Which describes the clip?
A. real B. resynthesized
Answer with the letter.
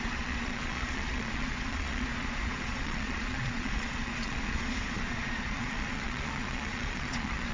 B